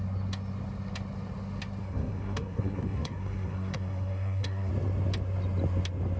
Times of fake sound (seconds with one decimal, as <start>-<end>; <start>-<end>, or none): 1.8-4.7